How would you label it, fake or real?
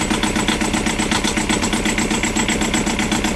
real